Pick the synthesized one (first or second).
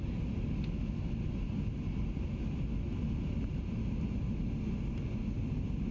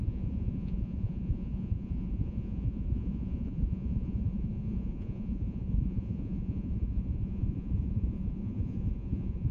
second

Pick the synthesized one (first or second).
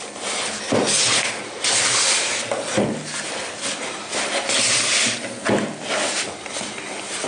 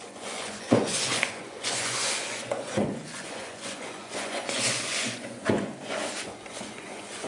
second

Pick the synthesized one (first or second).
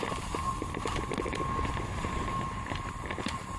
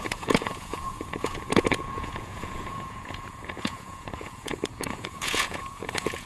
second